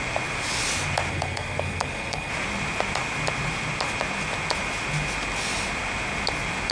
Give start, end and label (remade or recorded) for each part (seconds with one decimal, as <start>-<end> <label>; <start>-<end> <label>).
0.0-1.1 recorded; 1.1-2.3 remade; 2.3-6.7 recorded